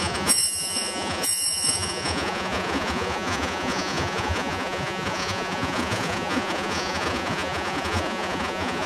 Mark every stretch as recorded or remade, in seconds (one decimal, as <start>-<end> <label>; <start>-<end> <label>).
0.0-8.9 remade